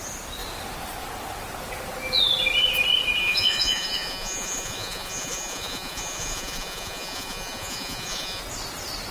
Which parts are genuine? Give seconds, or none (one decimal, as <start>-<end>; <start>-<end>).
0.0-3.2; 8.4-9.1